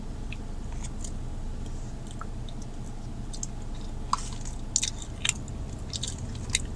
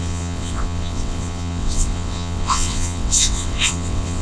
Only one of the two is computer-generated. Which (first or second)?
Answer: second